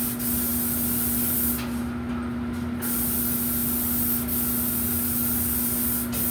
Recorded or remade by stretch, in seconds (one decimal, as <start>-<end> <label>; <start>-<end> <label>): 0.0-6.3 recorded